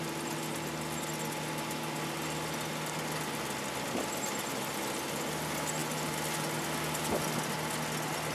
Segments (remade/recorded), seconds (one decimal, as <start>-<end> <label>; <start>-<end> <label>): 0.0-8.3 recorded